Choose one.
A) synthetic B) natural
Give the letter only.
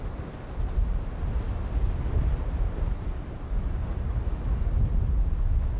B